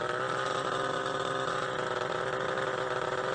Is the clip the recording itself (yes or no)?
yes